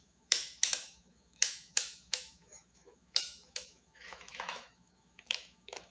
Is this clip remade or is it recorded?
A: remade